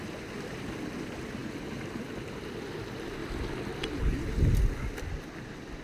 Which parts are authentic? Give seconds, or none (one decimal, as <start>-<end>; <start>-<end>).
0.0-5.8